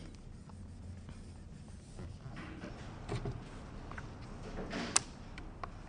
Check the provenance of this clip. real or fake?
real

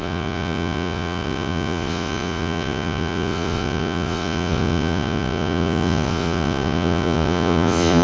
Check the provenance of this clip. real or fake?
fake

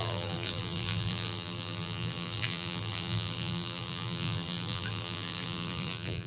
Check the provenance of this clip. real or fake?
fake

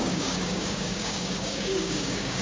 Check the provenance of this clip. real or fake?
fake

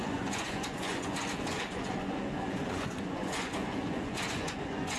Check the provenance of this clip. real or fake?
fake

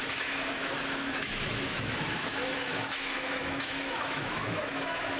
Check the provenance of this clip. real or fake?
fake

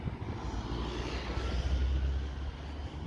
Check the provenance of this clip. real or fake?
real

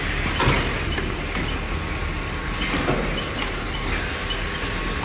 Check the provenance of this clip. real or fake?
real